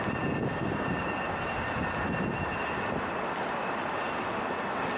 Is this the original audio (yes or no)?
yes